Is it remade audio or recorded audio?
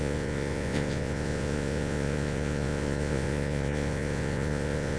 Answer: remade